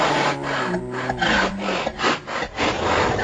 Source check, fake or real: real